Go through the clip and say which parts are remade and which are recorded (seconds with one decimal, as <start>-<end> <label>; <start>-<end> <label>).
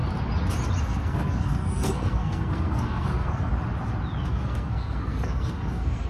0.0-0.8 recorded; 0.8-3.5 remade; 3.5-4.3 recorded; 4.3-6.1 remade